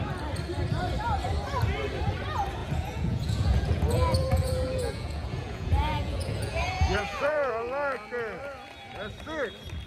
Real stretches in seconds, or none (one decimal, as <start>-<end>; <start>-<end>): 0.0-2.6; 7.5-9.9